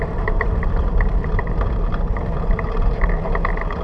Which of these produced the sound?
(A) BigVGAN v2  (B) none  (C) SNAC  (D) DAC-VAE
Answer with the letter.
A